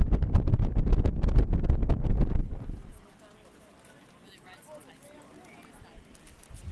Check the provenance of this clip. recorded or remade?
recorded